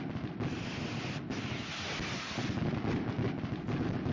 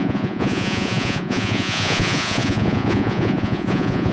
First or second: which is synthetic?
second